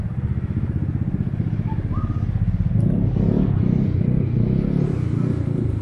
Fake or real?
real